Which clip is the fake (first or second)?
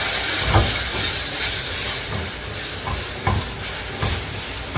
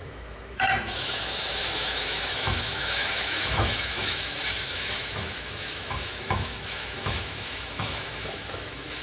second